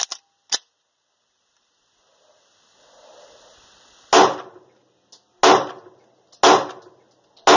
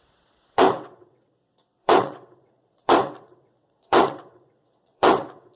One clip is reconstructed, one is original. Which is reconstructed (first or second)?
second